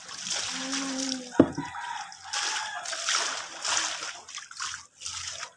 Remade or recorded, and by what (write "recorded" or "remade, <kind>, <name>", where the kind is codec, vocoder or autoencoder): recorded